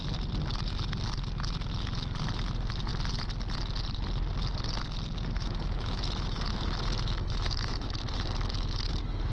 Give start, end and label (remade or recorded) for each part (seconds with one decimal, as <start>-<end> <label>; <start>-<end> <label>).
0.0-5.4 recorded; 5.4-8.9 remade; 8.9-9.3 recorded